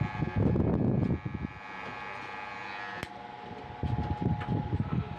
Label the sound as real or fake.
real